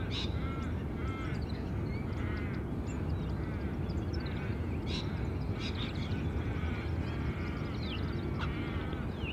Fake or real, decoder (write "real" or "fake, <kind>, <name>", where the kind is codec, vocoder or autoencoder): real